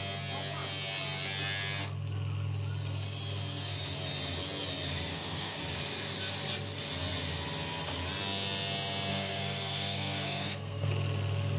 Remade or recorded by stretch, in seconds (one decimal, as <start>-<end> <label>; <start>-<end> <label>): 0.0-5.1 recorded; 5.1-5.6 remade; 5.6-9.1 recorded; 9.1-10.9 remade; 10.9-11.6 recorded